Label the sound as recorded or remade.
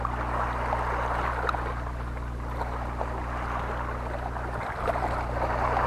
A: recorded